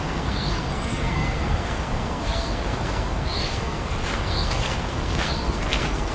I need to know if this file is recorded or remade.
remade